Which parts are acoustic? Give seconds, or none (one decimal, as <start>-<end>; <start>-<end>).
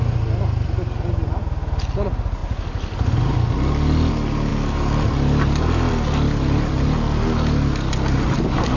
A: 0.0-8.8